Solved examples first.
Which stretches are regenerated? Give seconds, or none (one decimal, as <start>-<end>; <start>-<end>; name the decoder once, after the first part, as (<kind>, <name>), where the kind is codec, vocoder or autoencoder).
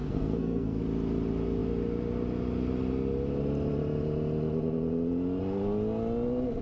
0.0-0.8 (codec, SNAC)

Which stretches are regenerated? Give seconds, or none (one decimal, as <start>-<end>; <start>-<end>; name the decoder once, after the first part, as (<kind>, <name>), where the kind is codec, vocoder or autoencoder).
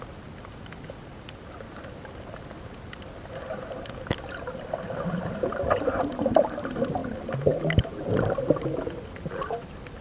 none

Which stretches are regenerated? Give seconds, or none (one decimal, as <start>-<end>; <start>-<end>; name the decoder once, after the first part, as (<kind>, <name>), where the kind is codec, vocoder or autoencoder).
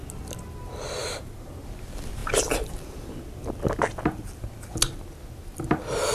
1.0-1.6 (vocoder, BigVGAN v2)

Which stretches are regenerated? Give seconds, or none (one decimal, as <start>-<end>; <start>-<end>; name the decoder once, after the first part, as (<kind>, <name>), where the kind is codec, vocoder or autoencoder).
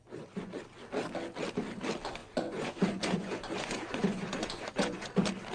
0.0-0.6 (vocoder, Vocos); 2.2-5.1